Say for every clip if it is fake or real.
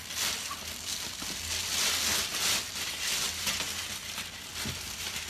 real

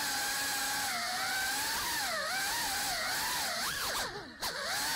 real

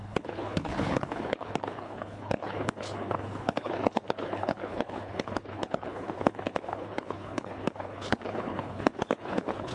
fake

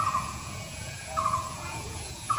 fake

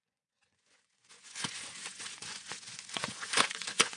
fake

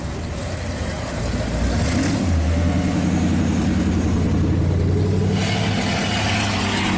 real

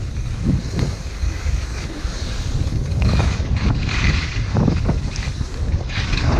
fake